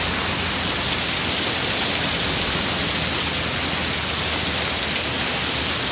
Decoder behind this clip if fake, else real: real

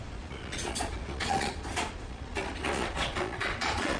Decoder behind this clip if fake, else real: fake, vocoder, Vocos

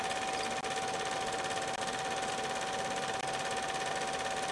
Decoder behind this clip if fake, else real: real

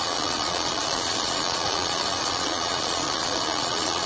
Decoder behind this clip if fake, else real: fake, vocoder, Vocos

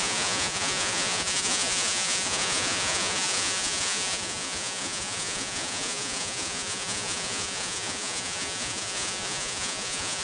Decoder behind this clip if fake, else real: fake, vocoder, Vocos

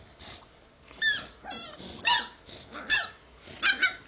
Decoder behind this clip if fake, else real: real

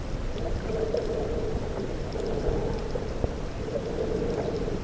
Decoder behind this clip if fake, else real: real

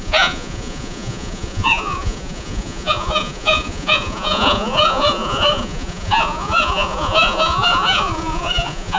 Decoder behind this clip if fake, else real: fake, vocoder, Vocos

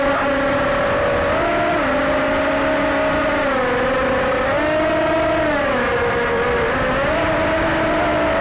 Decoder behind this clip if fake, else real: real